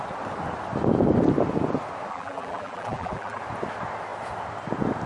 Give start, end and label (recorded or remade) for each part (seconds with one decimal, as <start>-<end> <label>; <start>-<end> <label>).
0.0-2.1 recorded; 2.1-3.4 remade; 3.4-5.1 recorded